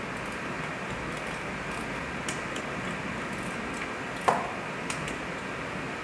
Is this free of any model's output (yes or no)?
yes